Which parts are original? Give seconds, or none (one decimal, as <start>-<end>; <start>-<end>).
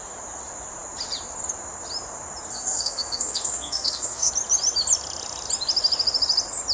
0.0-2.5; 4.3-6.7